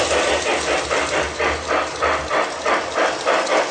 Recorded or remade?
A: recorded